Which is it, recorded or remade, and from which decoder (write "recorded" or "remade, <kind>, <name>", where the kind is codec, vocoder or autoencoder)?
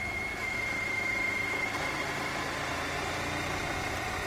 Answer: recorded